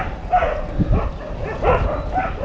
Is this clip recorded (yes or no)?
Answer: yes